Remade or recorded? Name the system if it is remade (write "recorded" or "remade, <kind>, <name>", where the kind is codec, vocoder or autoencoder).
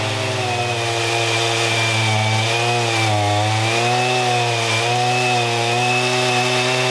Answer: recorded